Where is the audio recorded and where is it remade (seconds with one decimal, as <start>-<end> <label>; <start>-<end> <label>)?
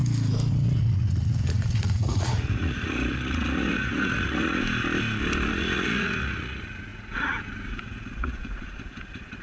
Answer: 0.0-0.5 recorded; 0.5-4.6 remade; 4.6-5.5 recorded; 5.5-9.4 remade